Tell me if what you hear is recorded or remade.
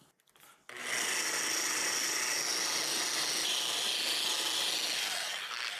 recorded